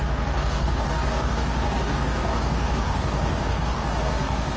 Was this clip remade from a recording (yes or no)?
yes